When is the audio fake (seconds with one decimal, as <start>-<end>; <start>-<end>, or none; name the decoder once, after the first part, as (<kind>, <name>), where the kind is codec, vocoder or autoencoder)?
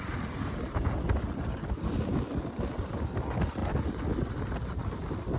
none